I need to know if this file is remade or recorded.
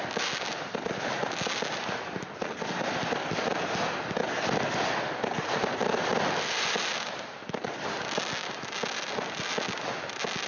recorded